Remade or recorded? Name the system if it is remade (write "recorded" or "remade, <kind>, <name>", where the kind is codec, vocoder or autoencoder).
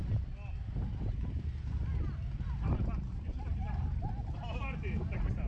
recorded